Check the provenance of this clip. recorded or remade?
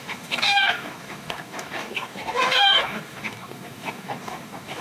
remade